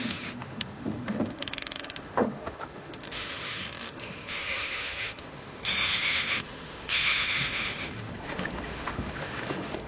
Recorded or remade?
remade